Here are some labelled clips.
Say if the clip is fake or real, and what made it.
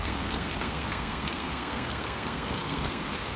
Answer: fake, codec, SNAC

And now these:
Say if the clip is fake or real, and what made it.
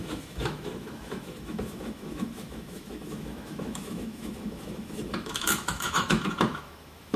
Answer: fake, autoencoder, DAC-VAE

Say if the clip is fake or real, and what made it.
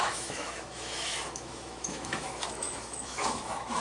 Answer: fake, autoencoder, DAC-VAE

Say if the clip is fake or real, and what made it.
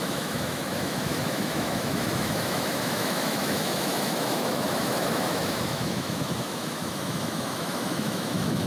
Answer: fake, autoencoder, DAC-VAE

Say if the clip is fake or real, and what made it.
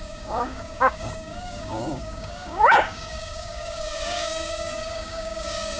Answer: fake, codec, DAC